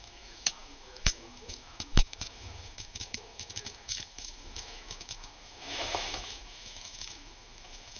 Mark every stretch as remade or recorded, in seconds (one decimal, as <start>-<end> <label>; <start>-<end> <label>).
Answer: 0.0-8.0 remade